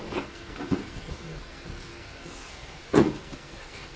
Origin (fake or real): fake